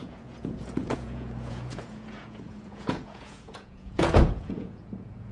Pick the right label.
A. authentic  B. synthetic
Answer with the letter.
B